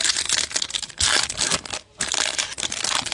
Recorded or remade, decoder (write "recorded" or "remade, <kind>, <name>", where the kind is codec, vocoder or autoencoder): recorded